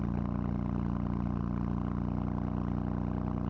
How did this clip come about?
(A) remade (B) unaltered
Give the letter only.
A